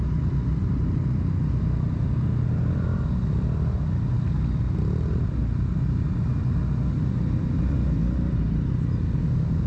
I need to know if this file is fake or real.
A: real